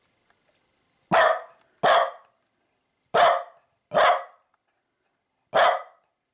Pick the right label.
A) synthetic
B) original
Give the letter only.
B